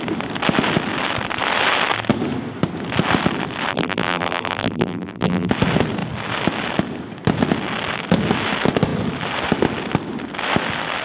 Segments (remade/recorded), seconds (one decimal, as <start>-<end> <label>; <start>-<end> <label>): 0.0-3.7 recorded; 3.7-5.5 remade; 5.5-11.0 recorded